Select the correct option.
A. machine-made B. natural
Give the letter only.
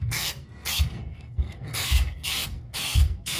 A